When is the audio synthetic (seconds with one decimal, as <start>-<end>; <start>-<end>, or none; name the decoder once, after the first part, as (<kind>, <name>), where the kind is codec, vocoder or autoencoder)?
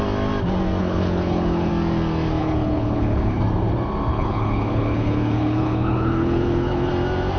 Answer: 0.8-1.7 (codec, HILCodec); 2.4-3.4; 4.1-6.9